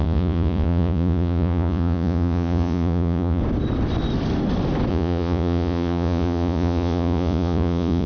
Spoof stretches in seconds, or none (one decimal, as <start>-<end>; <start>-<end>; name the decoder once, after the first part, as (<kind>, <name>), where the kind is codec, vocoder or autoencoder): 0.0-3.4 (vocoder, Vocos); 4.9-8.1